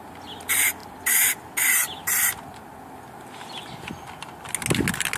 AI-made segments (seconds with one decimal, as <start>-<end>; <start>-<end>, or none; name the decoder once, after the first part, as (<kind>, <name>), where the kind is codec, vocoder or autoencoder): none